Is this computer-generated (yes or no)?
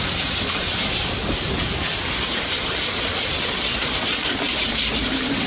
yes